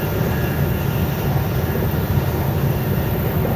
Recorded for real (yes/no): yes